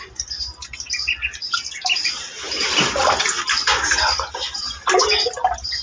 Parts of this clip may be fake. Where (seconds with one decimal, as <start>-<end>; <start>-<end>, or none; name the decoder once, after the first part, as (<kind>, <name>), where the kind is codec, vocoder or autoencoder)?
none